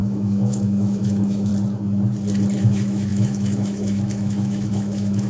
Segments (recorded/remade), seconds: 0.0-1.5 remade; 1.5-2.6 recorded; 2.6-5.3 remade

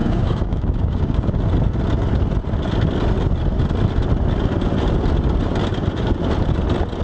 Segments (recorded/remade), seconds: 0.0-1.4 remade; 1.4-7.0 recorded

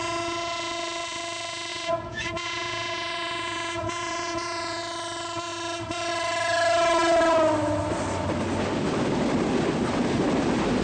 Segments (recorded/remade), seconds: 0.0-1.7 recorded; 1.7-4.8 remade; 4.8-10.8 recorded

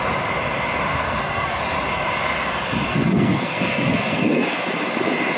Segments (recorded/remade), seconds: 0.0-0.9 recorded; 0.9-1.6 remade; 1.6-2.9 recorded; 2.9-4.6 remade; 4.6-5.4 recorded